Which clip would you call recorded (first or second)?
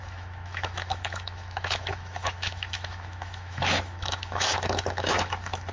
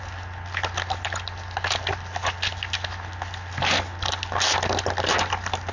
second